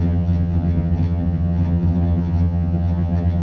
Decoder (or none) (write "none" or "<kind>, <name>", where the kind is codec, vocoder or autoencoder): vocoder, HiFi-GAN